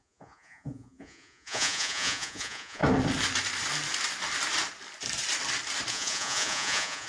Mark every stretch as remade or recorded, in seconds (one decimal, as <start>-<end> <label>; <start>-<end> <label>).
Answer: 0.0-2.8 remade; 2.8-5.9 recorded; 5.9-7.1 remade